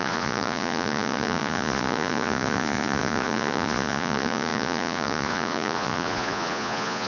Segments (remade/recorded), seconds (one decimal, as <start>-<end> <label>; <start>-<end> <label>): 0.0-7.1 remade